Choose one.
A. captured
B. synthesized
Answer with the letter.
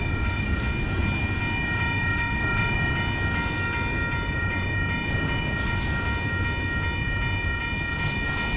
A